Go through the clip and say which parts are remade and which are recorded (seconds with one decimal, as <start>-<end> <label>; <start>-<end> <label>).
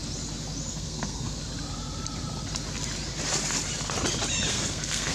0.0-0.7 recorded; 0.7-1.4 remade; 1.4-4.5 recorded; 4.5-5.1 remade